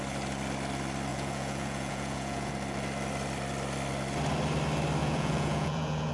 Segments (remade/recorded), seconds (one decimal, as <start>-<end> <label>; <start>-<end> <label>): 0.0-1.1 recorded; 1.1-2.5 remade; 2.5-5.0 recorded; 5.0-6.1 remade